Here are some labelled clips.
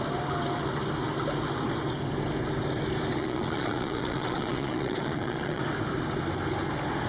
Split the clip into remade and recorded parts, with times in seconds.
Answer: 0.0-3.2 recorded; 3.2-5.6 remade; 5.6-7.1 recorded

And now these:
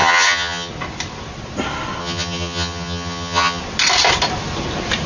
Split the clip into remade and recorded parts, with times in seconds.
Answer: 0.0-0.7 remade; 0.7-2.0 recorded; 2.0-3.6 remade; 3.6-5.1 recorded